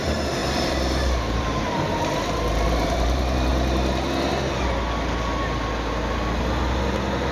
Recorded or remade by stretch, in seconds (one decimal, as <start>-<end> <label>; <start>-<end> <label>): 0.0-3.5 remade; 3.5-7.3 recorded